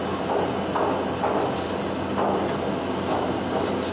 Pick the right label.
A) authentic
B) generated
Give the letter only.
A